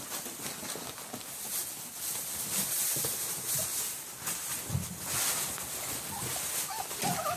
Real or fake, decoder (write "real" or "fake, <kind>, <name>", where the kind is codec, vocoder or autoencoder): real